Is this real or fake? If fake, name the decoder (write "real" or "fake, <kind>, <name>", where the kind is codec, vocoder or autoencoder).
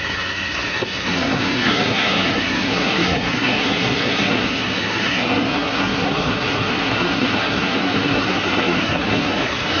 fake, codec, SNAC